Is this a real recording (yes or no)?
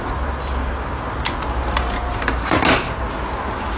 yes